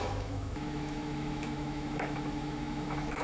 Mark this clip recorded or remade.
remade